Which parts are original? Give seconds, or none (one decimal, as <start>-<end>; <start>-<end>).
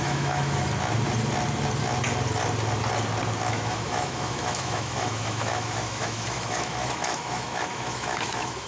0.6-3.5